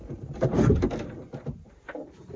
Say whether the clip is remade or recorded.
remade